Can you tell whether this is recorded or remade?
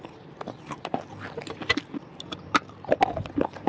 recorded